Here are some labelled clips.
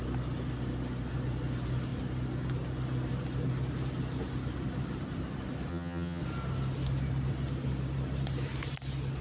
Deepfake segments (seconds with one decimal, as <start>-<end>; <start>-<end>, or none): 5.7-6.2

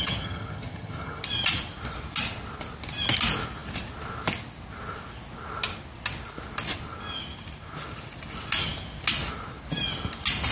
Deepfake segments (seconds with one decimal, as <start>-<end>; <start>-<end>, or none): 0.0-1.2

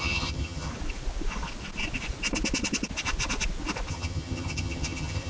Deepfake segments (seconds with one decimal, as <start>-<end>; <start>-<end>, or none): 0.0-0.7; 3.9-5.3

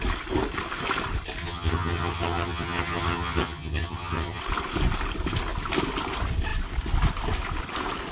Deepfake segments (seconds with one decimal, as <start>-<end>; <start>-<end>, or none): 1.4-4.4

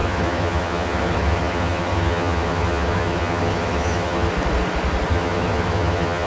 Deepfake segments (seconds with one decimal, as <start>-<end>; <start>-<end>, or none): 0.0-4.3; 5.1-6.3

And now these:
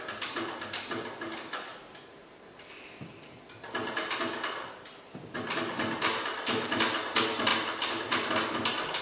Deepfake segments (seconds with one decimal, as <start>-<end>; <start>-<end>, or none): none

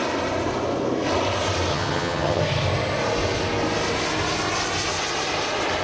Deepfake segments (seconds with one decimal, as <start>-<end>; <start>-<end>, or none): 1.7-2.4